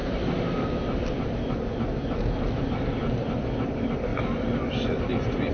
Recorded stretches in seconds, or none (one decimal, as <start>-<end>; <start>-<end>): 0.0-5.5